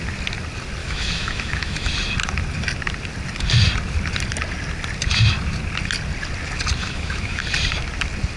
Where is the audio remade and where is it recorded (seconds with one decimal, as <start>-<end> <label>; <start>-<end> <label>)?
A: 0.0-0.8 recorded; 0.8-1.9 remade; 1.9-6.8 recorded; 6.8-7.4 remade; 7.4-8.4 recorded